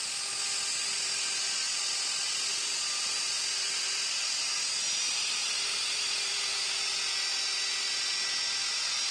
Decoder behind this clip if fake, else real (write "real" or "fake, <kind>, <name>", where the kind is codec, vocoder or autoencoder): real